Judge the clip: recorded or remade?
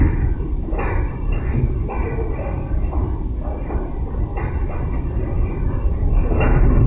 remade